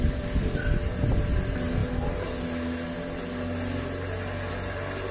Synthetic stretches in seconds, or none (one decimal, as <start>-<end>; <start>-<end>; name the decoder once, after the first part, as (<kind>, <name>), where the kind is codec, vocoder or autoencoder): none